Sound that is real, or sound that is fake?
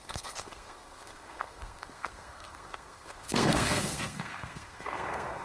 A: fake